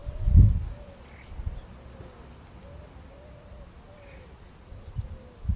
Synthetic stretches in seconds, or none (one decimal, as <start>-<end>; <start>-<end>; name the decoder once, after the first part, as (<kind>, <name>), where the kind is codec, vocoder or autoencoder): none